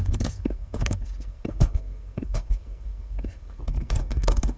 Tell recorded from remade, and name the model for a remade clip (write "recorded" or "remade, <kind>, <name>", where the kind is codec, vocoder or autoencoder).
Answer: remade, codec, SNAC